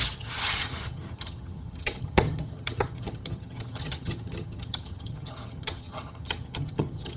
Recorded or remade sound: remade